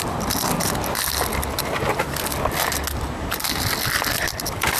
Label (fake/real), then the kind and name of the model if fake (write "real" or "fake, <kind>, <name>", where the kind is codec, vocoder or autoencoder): real